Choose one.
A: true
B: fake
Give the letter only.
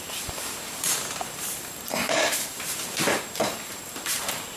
B